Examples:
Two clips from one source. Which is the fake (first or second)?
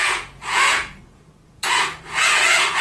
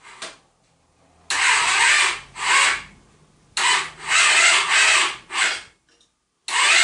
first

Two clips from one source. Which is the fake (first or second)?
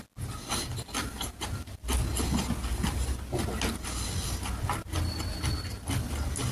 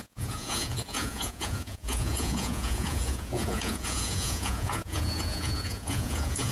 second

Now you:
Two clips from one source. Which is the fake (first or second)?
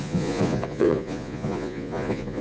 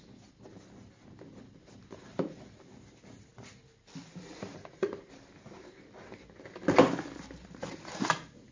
first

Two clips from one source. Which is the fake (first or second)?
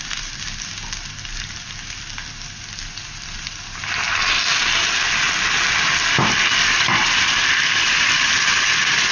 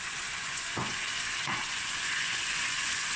second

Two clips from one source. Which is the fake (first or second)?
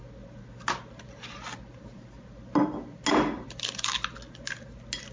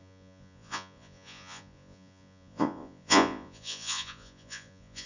second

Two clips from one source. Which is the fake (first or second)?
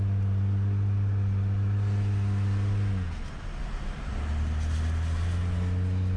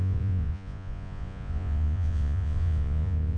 second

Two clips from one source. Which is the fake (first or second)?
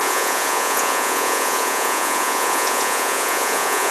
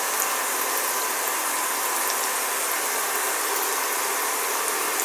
first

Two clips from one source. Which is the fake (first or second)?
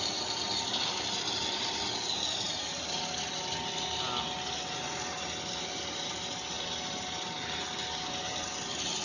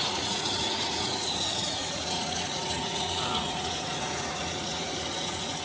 second